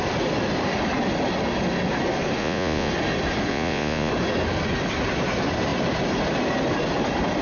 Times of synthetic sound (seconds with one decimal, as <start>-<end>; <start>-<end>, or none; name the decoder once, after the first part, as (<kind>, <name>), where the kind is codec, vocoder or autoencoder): 2.4-2.9 (vocoder, Vocos); 3.5-4.1

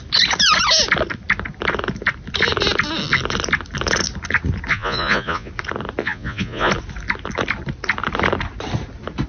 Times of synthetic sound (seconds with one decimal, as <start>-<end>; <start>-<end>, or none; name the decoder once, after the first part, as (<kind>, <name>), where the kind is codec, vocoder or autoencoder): 4.7-5.5 (vocoder, Vocos); 6.0-6.7

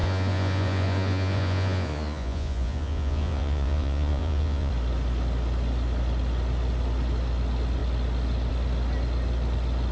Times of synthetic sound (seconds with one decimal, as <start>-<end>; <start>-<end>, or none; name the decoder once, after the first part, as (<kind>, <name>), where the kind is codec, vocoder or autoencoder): 0.0-4.7 (vocoder, Vocos)

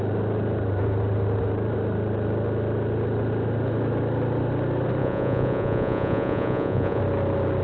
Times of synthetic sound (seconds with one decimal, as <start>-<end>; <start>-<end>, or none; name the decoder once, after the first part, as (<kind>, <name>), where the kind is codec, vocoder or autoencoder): 5.0-7.0 (vocoder, Vocos)

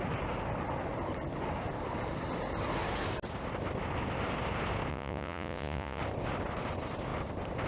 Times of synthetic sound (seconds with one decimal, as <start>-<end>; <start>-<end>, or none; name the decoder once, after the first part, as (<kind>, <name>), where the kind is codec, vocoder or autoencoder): 4.9-6.0 (vocoder, Vocos)

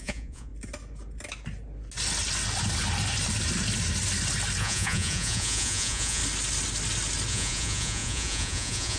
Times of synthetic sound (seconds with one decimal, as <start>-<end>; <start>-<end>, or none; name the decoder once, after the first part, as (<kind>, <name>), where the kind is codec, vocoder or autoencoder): 0.0-0.5 (vocoder, Vocos); 4.6-6.2; 7.3-9.0

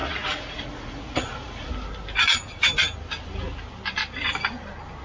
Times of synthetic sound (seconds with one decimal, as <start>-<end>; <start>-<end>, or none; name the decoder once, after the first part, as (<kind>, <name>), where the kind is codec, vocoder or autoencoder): 0.0-1.7 (vocoder, Vocos)